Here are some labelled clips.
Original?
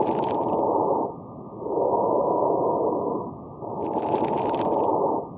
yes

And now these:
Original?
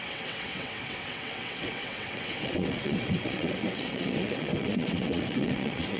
no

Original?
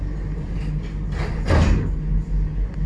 yes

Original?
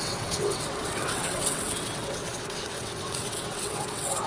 no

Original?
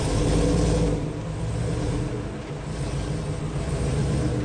yes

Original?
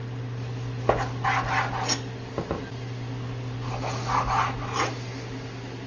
yes